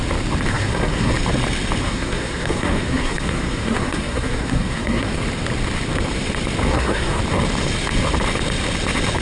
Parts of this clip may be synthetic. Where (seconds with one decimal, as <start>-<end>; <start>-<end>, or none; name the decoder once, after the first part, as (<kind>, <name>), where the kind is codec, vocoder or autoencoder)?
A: 0.5-1.1 (codec, SNAC); 1.8-5.2; 6.7-7.2